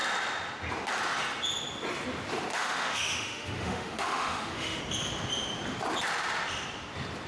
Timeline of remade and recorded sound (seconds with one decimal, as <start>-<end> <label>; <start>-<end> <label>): 0.0-2.5 recorded; 2.5-4.8 remade; 4.8-7.3 recorded